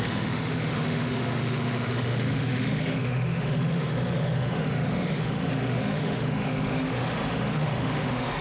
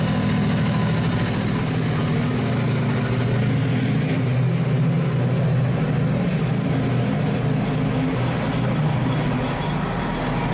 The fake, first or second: first